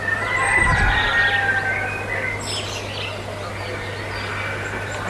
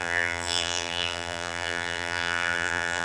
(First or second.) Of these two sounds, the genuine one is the first